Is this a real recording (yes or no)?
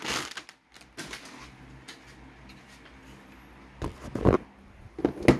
yes